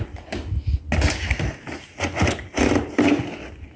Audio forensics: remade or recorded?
recorded